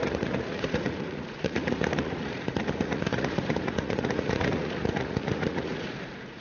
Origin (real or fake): fake